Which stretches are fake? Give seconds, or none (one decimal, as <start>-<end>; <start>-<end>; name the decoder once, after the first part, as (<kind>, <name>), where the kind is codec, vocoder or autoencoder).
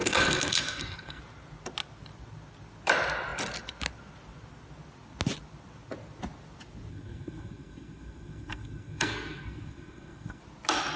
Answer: 0.0-1.2 (codec, SNAC); 6.9-10.4